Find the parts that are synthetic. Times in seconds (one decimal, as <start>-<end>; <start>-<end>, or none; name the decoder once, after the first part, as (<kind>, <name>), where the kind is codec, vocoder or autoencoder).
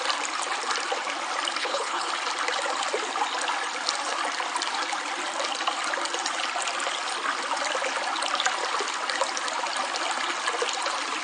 1.6-2.1 (codec, HILCodec)